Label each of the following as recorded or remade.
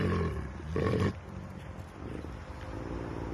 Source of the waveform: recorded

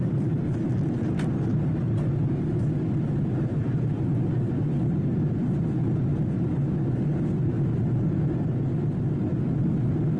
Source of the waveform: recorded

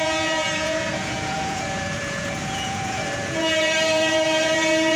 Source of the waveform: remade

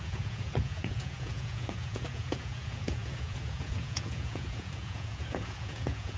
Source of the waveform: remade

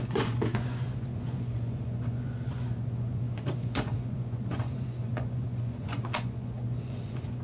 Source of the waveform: remade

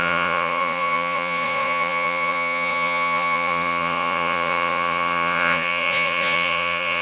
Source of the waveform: remade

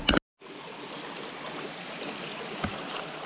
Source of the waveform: recorded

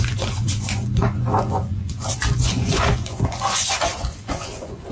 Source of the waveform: remade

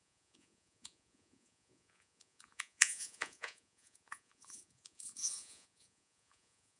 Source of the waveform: remade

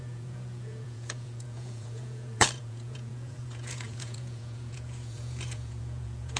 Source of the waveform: remade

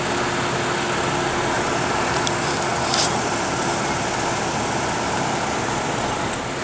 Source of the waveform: recorded